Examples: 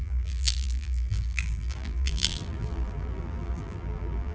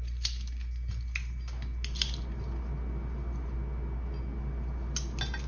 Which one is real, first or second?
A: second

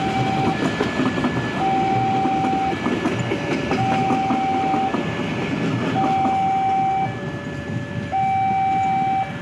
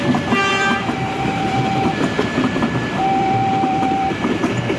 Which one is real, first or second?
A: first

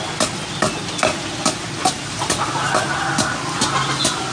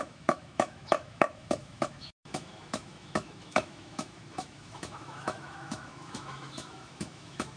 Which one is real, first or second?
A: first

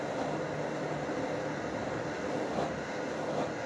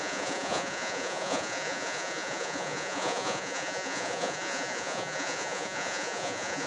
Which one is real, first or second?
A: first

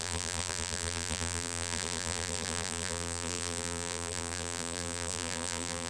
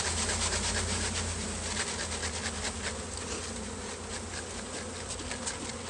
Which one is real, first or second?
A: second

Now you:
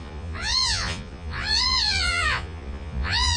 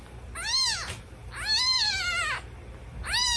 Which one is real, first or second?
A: second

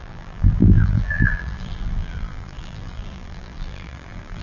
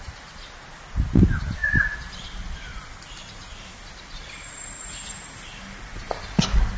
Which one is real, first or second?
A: second